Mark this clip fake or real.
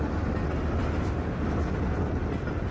real